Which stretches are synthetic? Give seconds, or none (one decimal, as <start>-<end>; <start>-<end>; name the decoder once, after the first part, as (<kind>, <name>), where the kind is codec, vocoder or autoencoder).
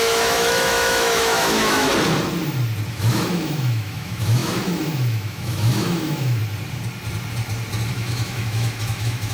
0.0-1.9 (autoencoder, DAC-VAE); 2.9-6.4; 7.9-9.3